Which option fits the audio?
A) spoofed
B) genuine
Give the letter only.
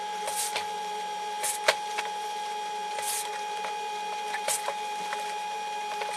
B